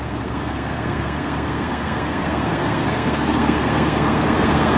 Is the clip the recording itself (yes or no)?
no